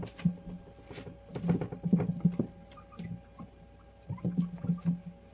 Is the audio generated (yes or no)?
no